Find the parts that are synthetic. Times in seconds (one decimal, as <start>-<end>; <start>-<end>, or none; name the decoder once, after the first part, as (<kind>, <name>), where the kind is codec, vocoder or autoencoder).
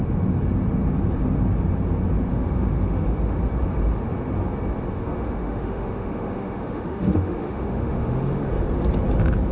2.3-3.4 (autoencoder, DAC-VAE); 4.9-8.5